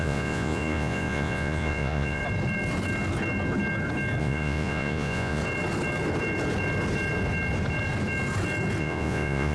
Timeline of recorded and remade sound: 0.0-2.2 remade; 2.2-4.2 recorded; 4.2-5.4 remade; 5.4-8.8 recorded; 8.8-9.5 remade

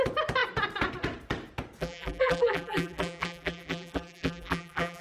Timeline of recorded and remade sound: 0.0-1.8 recorded; 1.8-5.0 remade

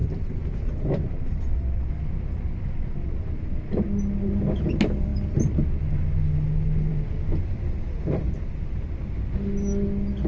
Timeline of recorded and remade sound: 0.0-1.9 remade; 1.9-10.3 recorded

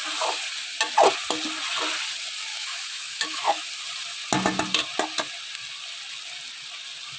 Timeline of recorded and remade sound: 0.0-2.5 recorded; 2.5-3.7 remade; 3.7-7.2 recorded

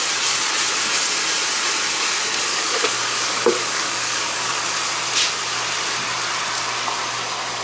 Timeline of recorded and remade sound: 0.0-2.5 recorded; 2.5-4.6 remade; 4.6-7.6 recorded

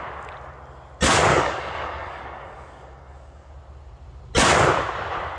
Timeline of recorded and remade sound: 0.0-1.3 recorded; 1.3-3.5 remade; 3.5-5.4 recorded

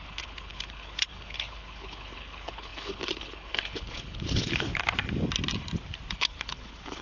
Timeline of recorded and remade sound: 0.0-4.7 remade; 4.7-6.1 recorded; 6.1-7.0 remade

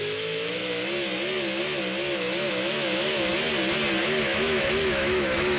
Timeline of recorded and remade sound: 0.0-0.6 remade; 0.6-2.5 recorded; 2.5-3.3 remade; 3.3-4.0 recorded; 4.0-5.6 remade